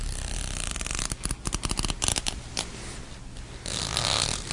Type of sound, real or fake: real